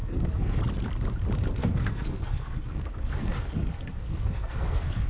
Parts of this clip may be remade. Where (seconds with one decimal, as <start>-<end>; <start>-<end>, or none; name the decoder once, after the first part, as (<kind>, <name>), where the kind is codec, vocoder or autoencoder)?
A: 0.0-0.6 (codec, SNAC); 1.6-5.1